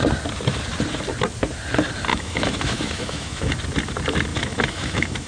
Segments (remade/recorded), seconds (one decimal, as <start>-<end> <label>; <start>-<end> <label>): 0.0-2.1 recorded; 2.1-3.5 remade; 3.5-4.3 recorded; 4.3-5.3 remade